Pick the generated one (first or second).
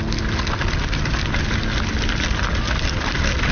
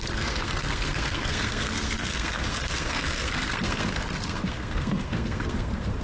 second